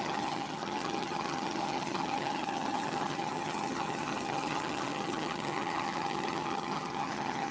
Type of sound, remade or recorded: remade